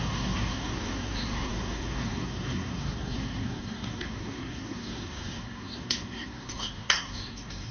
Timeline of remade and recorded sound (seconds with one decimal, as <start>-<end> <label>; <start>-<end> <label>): 0.0-7.7 remade